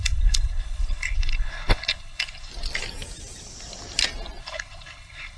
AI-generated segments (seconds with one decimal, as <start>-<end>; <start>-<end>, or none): 0.0-2.5; 4.4-5.4